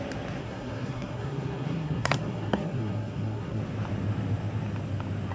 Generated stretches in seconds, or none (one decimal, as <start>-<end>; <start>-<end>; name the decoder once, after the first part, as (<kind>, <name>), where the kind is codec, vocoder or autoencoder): 0.4-3.6 (codec, SNAC)